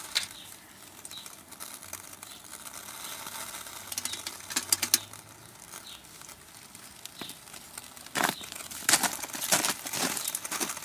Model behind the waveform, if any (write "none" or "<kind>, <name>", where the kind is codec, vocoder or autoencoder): none